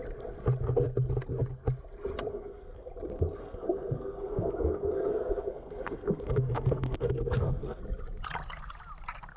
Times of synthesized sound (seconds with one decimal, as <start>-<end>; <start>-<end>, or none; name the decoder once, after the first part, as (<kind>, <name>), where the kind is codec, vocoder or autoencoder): 2.3-2.9 (codec, SNAC); 3.4-7.8